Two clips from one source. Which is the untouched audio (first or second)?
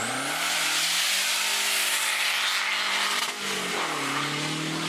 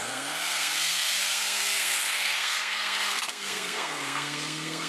first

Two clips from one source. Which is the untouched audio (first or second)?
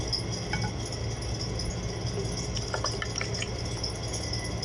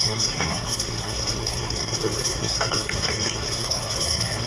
first